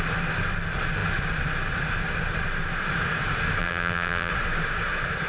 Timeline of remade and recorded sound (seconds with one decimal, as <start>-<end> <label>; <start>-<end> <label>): 0.0-3.6 recorded; 3.6-4.3 remade; 4.3-5.3 recorded